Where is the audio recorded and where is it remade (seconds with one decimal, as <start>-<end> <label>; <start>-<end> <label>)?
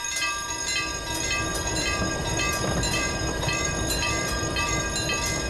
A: 0.0-1.5 recorded; 1.5-4.8 remade; 4.8-5.5 recorded